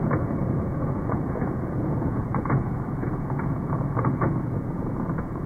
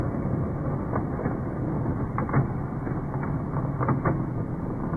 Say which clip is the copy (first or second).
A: first